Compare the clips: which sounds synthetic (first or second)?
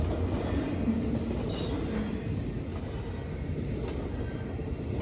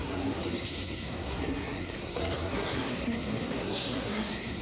second